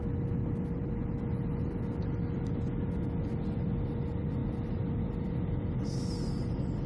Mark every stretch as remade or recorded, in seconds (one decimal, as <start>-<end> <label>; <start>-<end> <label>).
0.0-6.9 recorded